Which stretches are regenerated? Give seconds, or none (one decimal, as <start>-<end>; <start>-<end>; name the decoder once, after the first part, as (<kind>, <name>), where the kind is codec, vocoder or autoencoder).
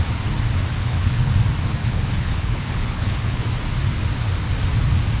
0.8-1.3 (codec, HILCodec); 1.8-3.4